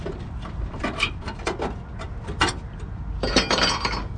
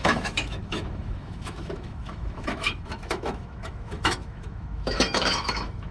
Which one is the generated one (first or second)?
second